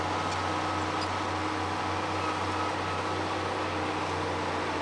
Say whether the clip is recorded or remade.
recorded